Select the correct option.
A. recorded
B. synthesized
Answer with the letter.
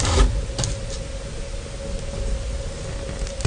A